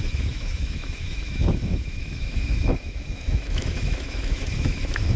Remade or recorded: remade